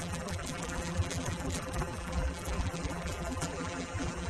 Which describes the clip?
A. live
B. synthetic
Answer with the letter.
B